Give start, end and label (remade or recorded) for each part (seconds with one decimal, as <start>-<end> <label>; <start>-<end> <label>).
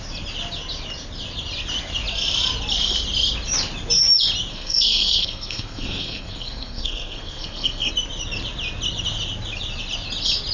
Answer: 0.0-4.5 recorded; 4.5-7.9 remade; 7.9-10.5 recorded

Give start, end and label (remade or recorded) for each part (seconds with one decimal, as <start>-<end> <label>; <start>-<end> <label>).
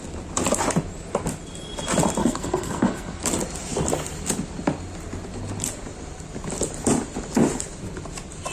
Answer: 0.0-2.2 recorded; 2.2-3.2 remade; 3.2-8.5 recorded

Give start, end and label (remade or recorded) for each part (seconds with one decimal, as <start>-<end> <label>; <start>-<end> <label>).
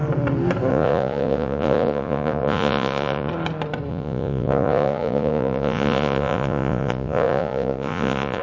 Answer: 0.0-0.7 recorded; 0.7-3.3 remade; 3.3-3.9 recorded; 3.9-8.4 remade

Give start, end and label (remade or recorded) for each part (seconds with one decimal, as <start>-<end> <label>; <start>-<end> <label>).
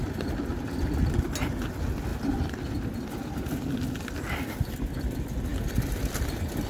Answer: 0.0-6.7 recorded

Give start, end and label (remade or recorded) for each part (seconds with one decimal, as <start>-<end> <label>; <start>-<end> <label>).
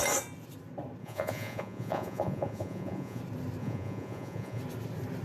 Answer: 0.0-1.0 recorded; 1.0-3.2 remade; 3.2-3.6 recorded; 3.6-4.6 remade; 4.6-5.2 recorded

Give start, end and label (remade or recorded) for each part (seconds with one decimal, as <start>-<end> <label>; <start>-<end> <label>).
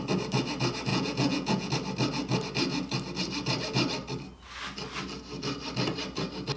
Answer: 0.0-0.9 recorded; 0.9-1.7 remade; 1.7-6.6 recorded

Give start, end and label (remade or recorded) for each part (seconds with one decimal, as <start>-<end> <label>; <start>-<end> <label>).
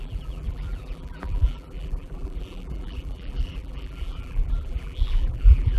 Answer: 0.0-5.8 remade